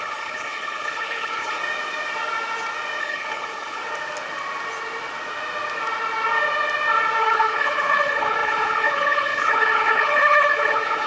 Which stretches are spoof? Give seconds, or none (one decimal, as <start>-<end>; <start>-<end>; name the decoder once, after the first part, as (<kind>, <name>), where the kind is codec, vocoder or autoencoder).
0.0-1.6 (codec, HILCodec); 3.0-3.8; 7.2-11.1